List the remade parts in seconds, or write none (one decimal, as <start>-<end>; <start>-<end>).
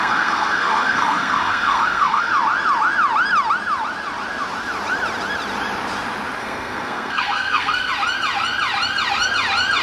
0.0-2.3; 6.4-7.9